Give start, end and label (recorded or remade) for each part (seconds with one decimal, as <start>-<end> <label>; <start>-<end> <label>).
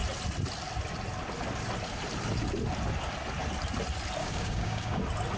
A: 0.0-4.2 recorded; 4.2-5.0 remade; 5.0-5.4 recorded